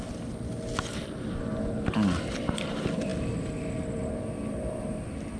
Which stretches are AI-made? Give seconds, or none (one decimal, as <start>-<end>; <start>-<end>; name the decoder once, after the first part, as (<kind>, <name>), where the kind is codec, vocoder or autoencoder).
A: none